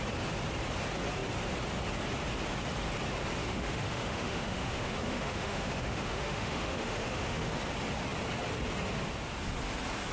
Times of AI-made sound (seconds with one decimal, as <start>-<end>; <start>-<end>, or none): 3.4-7.5